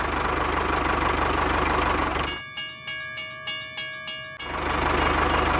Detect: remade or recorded recorded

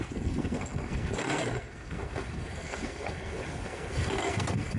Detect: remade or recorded remade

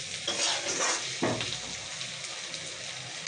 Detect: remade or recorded recorded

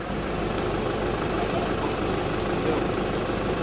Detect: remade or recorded recorded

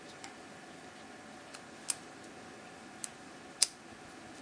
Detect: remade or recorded recorded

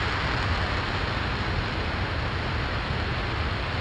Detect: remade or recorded recorded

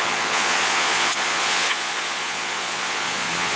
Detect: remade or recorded remade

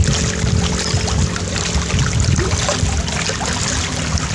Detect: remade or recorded recorded